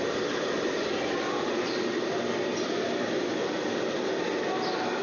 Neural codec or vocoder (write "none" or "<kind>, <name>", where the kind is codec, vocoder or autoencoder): none